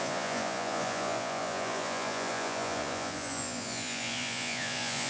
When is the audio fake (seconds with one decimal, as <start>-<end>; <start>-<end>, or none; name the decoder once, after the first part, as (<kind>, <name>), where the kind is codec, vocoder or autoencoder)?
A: 0.0-5.1 (vocoder, Vocos)